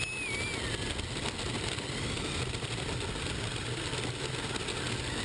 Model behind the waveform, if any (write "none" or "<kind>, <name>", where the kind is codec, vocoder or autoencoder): none